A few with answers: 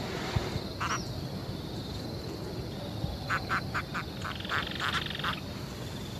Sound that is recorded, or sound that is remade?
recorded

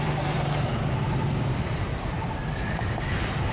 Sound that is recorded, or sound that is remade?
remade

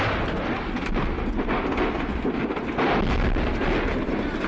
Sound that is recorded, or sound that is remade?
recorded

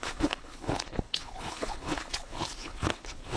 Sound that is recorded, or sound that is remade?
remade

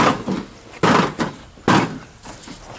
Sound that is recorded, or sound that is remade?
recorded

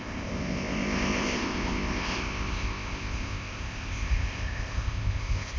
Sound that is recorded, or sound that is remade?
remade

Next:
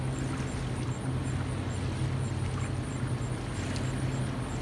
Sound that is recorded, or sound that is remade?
recorded